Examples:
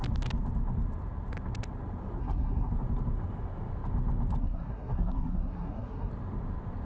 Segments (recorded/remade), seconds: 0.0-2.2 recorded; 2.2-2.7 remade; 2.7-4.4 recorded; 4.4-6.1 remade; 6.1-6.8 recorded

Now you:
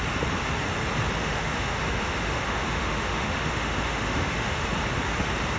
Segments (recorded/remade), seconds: 0.0-1.2 recorded; 1.2-4.6 remade; 4.6-5.6 recorded

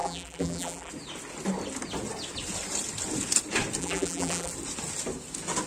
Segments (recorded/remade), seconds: 0.0-0.9 remade; 0.9-3.8 recorded; 3.8-4.5 remade; 4.5-5.7 recorded

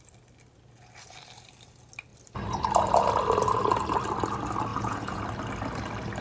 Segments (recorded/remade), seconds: 0.0-4.7 recorded; 4.7-5.2 remade; 5.2-6.2 recorded

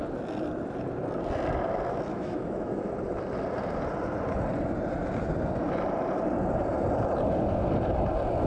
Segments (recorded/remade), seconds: 0.0-2.1 recorded; 2.1-2.9 remade; 2.9-8.5 recorded